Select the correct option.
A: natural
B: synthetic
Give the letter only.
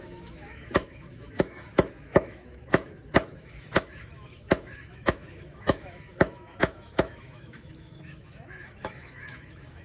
B